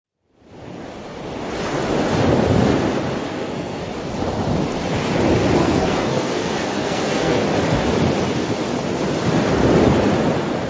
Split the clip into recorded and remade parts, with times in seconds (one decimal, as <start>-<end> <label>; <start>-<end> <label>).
0.0-3.3 recorded; 3.3-3.9 remade; 3.9-5.6 recorded; 5.6-7.4 remade; 7.4-10.7 recorded